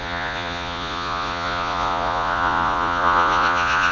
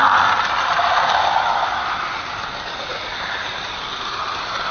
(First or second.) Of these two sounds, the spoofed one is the first